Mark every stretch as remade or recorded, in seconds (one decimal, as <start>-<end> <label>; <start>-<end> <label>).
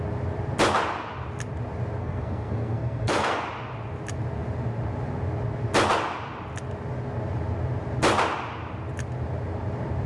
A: 0.0-2.0 recorded; 2.0-3.4 remade; 3.4-10.1 recorded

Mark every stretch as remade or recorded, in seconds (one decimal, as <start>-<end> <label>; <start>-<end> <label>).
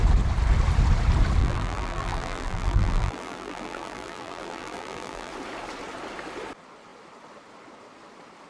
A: 0.0-1.4 recorded; 1.4-5.3 remade; 5.3-8.5 recorded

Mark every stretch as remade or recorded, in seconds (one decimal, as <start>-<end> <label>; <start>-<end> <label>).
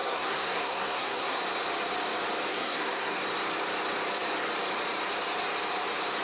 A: 0.0-1.4 remade; 1.4-2.5 recorded; 2.5-3.2 remade; 3.2-6.2 recorded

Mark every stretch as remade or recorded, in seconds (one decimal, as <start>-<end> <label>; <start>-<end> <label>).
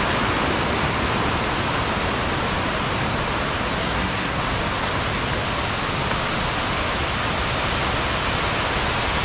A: 0.0-3.8 recorded; 3.8-4.4 remade; 4.4-9.2 recorded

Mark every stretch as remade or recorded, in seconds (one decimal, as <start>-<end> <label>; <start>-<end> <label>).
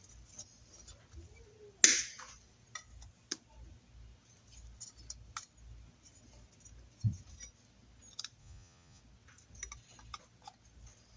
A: 0.0-8.4 recorded; 8.4-9.0 remade; 9.0-11.2 recorded